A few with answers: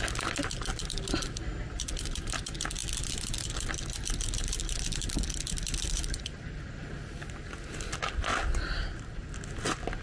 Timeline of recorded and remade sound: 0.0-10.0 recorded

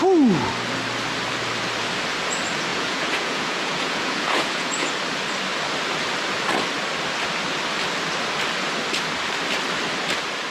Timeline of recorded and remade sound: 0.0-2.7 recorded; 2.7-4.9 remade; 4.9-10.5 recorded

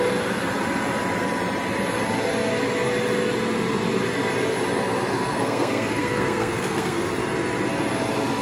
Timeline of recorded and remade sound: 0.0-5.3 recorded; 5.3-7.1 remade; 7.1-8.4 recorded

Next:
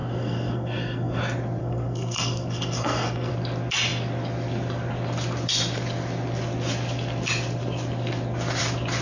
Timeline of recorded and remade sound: 0.0-1.2 remade; 1.2-1.6 recorded; 1.6-3.3 remade; 3.3-9.0 recorded

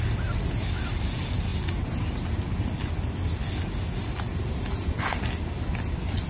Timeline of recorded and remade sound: 0.0-6.3 recorded

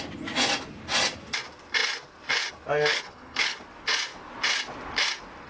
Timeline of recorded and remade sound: 0.0-2.9 recorded; 2.9-3.6 remade; 3.6-5.5 recorded